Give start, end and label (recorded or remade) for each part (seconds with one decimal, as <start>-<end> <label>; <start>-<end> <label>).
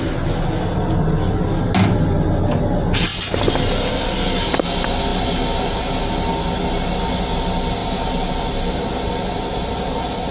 0.0-10.3 recorded